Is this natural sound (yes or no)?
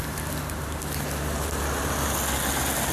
yes